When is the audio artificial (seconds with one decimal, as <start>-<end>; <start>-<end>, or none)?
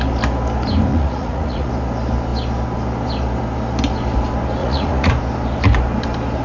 0.9-1.7; 4.6-5.1